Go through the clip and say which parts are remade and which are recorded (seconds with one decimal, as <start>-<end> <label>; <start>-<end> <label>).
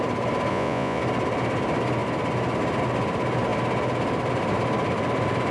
0.0-0.5 recorded; 0.5-1.0 remade; 1.0-5.5 recorded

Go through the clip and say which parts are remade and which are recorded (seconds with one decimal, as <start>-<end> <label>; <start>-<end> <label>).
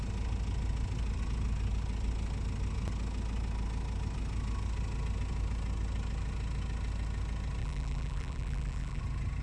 0.0-7.6 recorded; 7.6-9.0 remade; 9.0-9.4 recorded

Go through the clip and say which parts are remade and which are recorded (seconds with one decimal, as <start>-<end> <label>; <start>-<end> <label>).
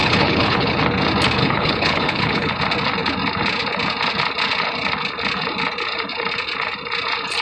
0.0-0.8 remade; 0.8-1.4 recorded; 1.4-2.6 remade; 2.6-7.4 recorded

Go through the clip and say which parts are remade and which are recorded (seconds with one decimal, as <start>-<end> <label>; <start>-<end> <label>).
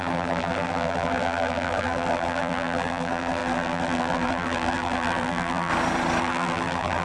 0.0-5.7 remade; 5.7-6.2 recorded; 6.2-7.0 remade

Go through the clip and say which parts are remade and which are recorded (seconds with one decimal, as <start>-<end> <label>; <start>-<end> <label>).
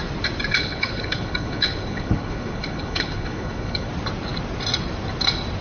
0.0-0.5 recorded; 0.5-3.9 remade; 3.9-5.6 recorded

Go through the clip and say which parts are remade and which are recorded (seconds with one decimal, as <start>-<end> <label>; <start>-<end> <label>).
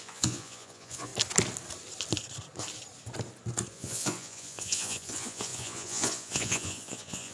0.0-1.1 remade; 1.1-3.7 recorded; 3.7-7.3 remade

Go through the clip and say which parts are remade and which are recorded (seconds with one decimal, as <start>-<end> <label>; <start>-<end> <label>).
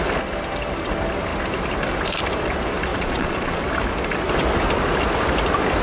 0.0-2.9 recorded; 2.9-3.6 remade; 3.6-5.8 recorded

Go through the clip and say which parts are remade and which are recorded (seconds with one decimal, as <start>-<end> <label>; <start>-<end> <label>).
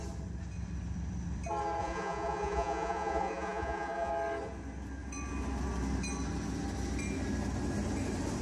0.0-1.8 recorded; 1.8-4.1 remade; 4.1-8.4 recorded